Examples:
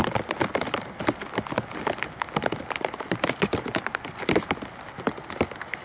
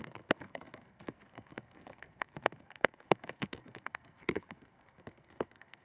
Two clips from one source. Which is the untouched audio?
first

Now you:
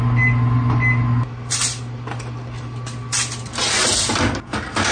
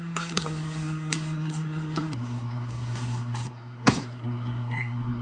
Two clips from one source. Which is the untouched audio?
first